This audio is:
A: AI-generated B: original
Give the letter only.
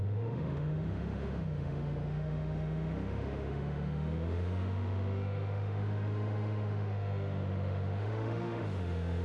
A